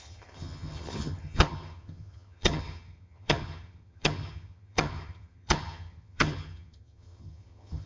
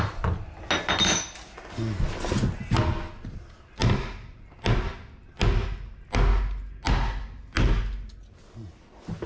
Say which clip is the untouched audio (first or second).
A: second